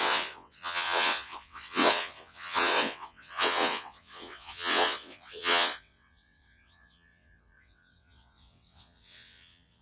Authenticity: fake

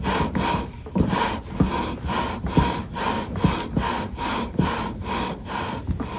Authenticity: real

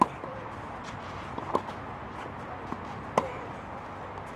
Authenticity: real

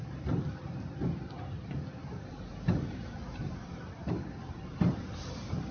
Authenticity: fake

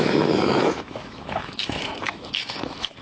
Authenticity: fake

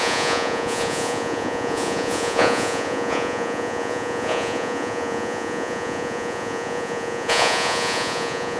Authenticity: fake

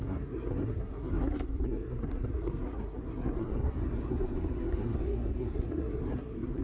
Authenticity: fake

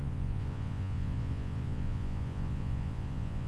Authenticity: fake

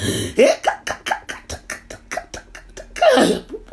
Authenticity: real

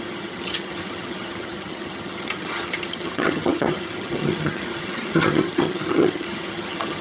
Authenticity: fake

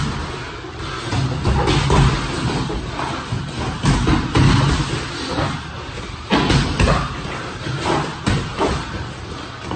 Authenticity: real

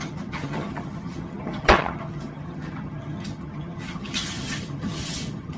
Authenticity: fake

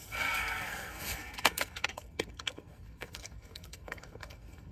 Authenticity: fake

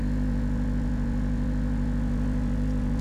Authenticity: fake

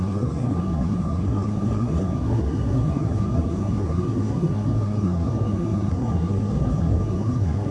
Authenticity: fake